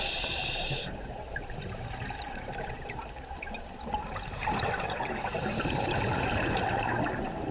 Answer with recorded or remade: remade